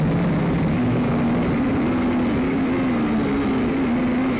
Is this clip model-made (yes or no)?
no